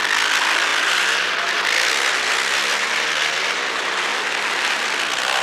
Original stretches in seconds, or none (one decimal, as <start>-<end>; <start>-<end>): 0.0-5.4